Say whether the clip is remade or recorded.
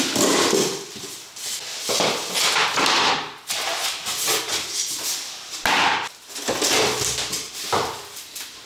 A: recorded